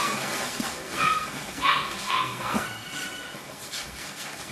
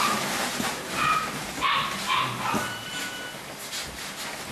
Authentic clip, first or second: second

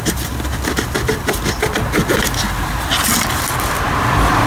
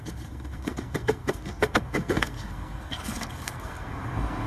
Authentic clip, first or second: first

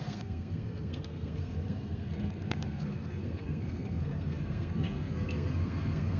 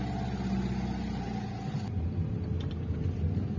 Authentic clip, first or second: second